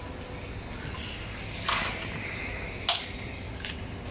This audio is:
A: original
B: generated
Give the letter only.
A